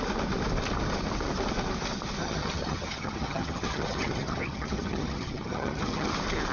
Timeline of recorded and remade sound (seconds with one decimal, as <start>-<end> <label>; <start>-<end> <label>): 0.0-2.2 recorded; 2.2-6.1 remade; 6.1-6.5 recorded